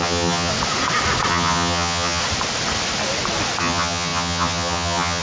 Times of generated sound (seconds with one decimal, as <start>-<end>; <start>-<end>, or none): 0.0-0.5; 1.3-2.2; 3.6-5.2